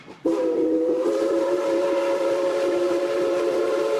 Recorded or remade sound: remade